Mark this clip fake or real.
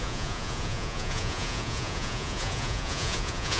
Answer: fake